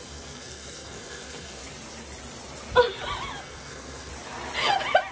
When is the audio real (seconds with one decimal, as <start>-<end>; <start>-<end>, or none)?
1.6-3.4; 4.1-5.1